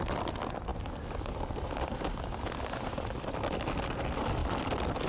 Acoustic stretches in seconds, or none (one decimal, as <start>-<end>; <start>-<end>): 0.0-5.1